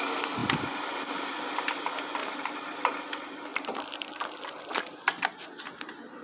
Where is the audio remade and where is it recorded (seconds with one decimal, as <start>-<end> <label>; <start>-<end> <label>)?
0.0-2.2 recorded; 2.2-2.8 remade; 2.8-6.2 recorded

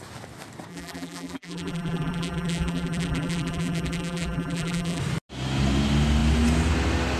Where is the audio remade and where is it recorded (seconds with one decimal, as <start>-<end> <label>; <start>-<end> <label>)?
0.0-0.7 recorded; 0.7-5.0 remade; 5.0-7.2 recorded

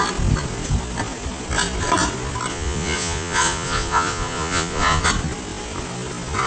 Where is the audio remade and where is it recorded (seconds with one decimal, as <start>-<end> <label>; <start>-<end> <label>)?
0.0-2.5 recorded; 2.5-5.0 remade; 5.0-6.5 recorded

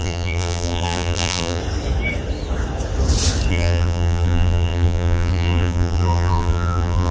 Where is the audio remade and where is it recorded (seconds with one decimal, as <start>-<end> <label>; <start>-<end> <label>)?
0.0-1.6 remade; 1.6-3.5 recorded; 3.5-7.1 remade

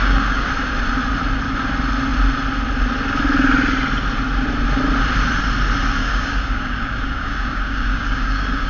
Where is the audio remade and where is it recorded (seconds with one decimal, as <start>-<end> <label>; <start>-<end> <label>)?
0.0-0.5 remade; 0.5-6.0 recorded; 6.0-8.7 remade